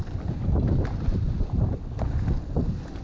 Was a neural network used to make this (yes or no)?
no